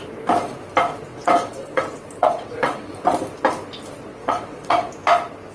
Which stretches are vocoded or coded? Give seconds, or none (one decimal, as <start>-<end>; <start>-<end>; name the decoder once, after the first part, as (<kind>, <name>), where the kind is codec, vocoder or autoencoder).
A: 1.1-1.8 (vocoder, WaveNeXt); 2.2-2.9; 4.1-4.9